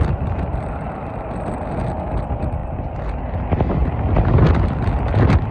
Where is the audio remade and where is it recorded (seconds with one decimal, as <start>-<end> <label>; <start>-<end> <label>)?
0.0-2.6 recorded; 2.6-3.2 remade; 3.2-3.8 recorded; 3.8-4.3 remade; 4.3-5.5 recorded